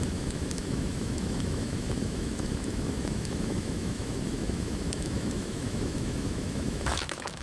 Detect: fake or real fake